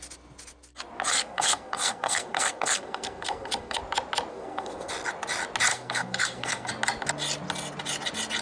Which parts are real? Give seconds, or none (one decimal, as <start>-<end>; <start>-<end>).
0.0-1.1; 3.8-4.3; 4.9-5.7; 6.7-8.4